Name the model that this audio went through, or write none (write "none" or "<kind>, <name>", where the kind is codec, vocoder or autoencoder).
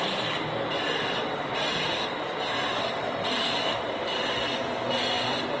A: none